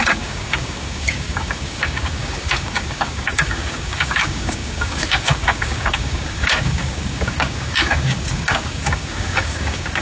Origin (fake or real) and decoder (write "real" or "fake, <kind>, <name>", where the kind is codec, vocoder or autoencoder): fake, codec, DAC